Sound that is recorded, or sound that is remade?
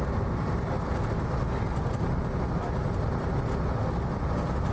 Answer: recorded